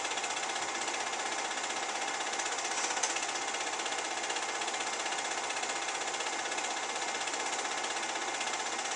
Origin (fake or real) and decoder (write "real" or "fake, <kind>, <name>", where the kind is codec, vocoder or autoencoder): real